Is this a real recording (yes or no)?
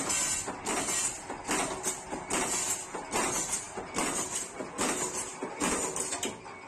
yes